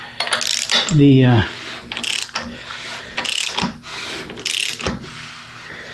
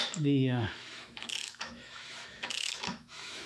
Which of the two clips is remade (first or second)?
second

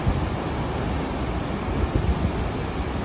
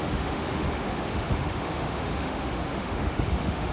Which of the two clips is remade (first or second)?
second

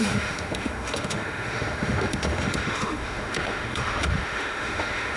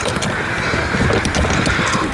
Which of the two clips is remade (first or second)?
first